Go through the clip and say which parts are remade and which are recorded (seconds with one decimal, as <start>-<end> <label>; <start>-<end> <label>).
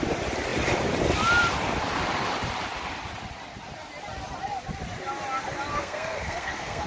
0.0-5.7 recorded; 5.7-6.9 remade